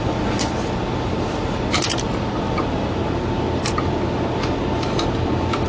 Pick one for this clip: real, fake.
real